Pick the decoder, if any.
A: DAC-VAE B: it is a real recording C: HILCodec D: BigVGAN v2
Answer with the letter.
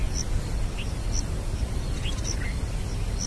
B